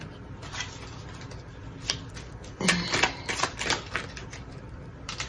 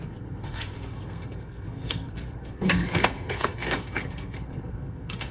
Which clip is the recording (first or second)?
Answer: first